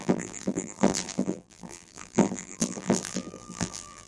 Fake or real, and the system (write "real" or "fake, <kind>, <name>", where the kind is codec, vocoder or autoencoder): fake, vocoder, BigVGAN v2